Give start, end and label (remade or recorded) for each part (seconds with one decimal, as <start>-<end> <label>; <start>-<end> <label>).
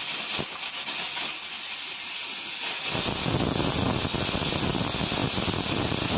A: 0.0-6.2 recorded